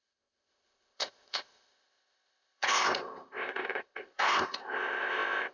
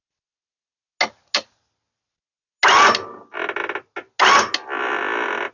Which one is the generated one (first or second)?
first